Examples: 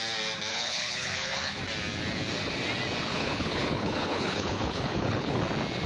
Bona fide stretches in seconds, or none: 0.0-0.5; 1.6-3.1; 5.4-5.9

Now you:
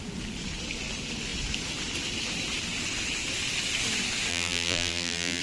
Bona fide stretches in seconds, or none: 0.0-4.3

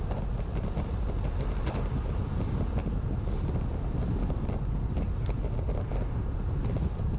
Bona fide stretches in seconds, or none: 0.0-7.2